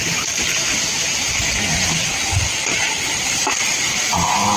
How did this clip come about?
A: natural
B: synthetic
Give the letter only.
A